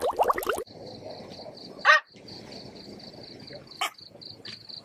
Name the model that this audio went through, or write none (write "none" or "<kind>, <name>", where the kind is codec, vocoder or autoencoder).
none